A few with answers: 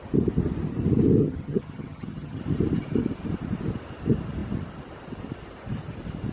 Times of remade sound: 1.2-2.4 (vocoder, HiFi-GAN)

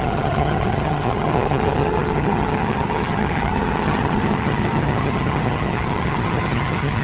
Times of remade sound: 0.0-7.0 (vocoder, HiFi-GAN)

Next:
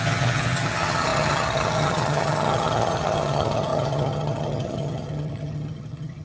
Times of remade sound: 0.0-6.2 (vocoder, HiFi-GAN)